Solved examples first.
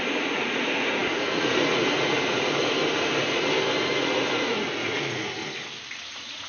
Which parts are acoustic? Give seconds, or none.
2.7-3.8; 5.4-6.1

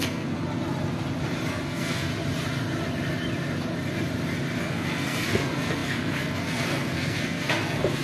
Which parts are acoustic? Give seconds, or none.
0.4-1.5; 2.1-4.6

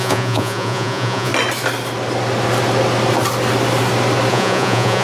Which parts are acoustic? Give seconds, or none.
1.3-4.3